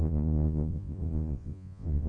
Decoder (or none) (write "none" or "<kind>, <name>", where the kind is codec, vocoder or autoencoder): vocoder, Vocos